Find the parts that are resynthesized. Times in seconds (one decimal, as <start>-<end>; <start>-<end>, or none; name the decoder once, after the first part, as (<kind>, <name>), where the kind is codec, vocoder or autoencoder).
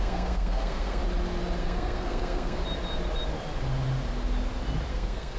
0.0-1.0 (codec, SNAC); 1.6-2.6; 4.9-5.4